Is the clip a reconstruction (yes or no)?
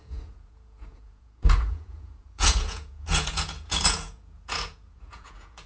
yes